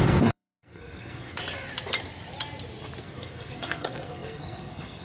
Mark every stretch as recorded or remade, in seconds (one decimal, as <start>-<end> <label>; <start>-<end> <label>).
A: 0.0-1.4 remade; 1.4-3.0 recorded; 3.0-5.0 remade